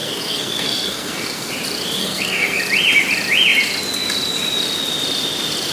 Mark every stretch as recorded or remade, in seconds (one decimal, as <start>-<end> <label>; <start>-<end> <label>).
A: 0.0-1.5 remade; 1.5-2.0 recorded; 2.0-2.6 remade; 2.6-5.7 recorded